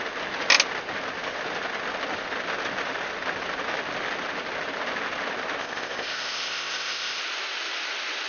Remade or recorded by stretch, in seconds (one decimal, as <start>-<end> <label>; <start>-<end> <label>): 0.0-5.6 recorded; 5.6-7.2 remade; 7.2-8.3 recorded